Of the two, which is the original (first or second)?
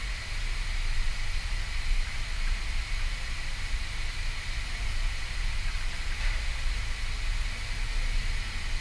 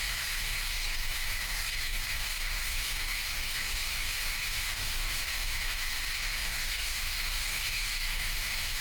first